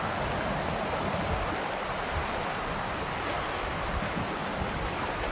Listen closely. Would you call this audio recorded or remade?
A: recorded